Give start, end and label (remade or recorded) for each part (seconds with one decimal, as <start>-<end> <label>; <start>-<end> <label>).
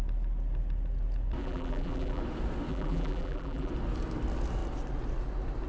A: 0.0-1.4 recorded; 1.4-2.2 remade; 2.2-2.7 recorded; 2.7-3.7 remade; 3.7-5.7 recorded